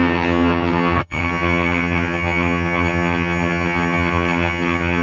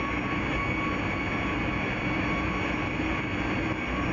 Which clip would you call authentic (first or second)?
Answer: second